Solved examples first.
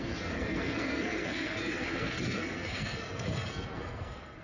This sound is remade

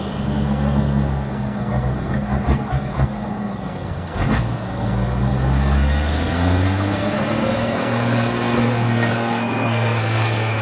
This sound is remade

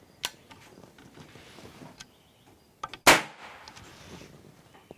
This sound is recorded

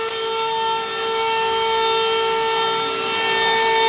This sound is recorded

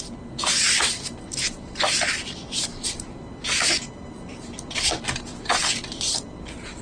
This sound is recorded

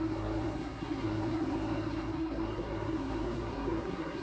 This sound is remade